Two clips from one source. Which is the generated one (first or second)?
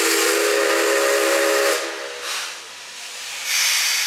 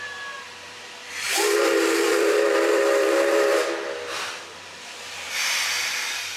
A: second